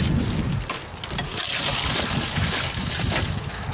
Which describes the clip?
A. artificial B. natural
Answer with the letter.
B